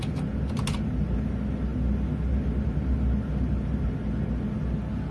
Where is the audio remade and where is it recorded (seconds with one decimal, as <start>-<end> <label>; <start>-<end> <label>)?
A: 0.0-5.1 recorded